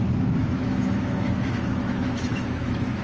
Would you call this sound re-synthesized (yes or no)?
yes